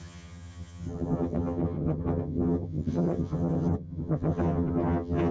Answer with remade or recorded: remade